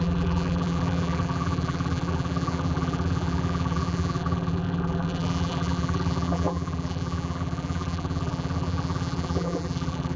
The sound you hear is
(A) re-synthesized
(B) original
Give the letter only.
A